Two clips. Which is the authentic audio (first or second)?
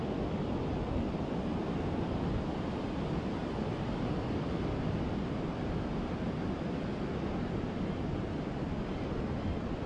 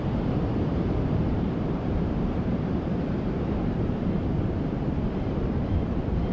first